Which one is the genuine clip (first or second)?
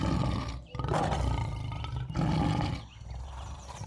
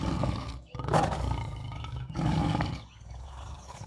first